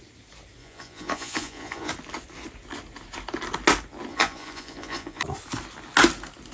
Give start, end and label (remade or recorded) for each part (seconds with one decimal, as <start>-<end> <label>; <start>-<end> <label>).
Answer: 0.0-0.6 recorded; 0.6-1.9 remade; 1.9-4.1 recorded; 4.1-5.2 remade; 5.2-6.5 recorded